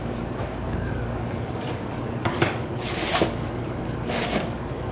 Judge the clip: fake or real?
fake